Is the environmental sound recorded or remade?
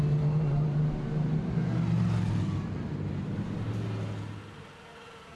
recorded